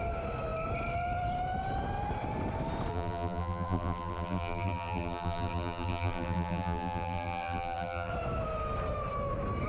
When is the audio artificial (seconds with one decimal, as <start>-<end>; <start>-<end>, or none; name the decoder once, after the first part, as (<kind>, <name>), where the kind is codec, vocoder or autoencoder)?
2.9-8.1 (vocoder, BigVGAN v2)